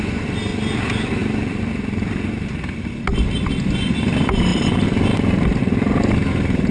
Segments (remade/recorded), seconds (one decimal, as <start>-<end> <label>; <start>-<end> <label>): 0.0-6.7 recorded